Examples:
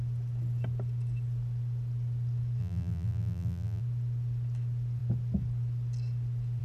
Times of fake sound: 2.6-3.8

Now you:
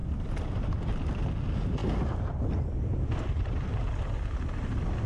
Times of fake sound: 0.0-1.2

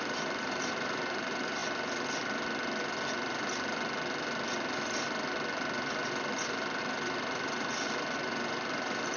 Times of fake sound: 0.0-1.6; 6.8-9.2

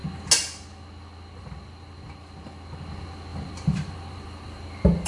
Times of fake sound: 3.3-5.1

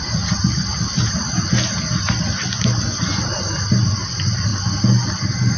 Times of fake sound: 0.0-0.7; 1.2-1.9; 4.1-4.5

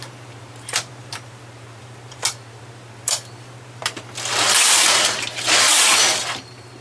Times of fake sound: 0.0-3.8; 5.7-6.8